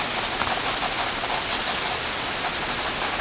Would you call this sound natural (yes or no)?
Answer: yes